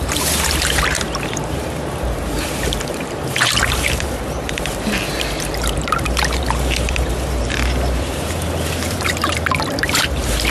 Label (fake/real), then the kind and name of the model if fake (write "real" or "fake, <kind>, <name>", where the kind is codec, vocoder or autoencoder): fake, vocoder, BigVGAN v2